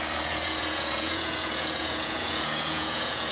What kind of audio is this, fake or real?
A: fake